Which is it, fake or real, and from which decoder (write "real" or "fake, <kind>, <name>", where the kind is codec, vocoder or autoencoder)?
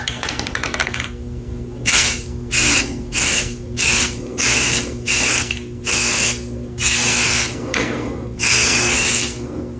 fake, codec, SNAC